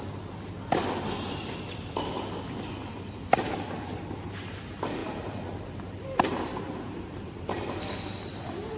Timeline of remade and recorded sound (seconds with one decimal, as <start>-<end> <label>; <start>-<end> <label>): 0.0-5.0 recorded; 5.0-8.0 remade; 8.0-8.8 recorded